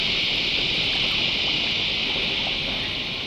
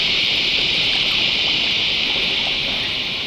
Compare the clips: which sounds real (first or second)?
first